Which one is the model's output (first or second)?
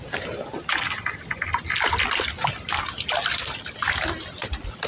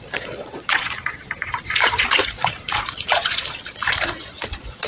second